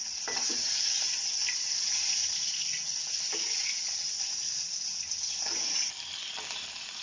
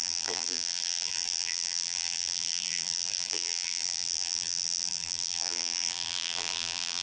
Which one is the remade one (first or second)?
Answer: second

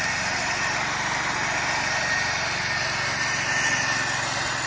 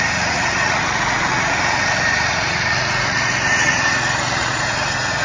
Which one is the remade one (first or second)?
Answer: second